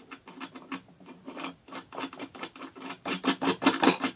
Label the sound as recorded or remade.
recorded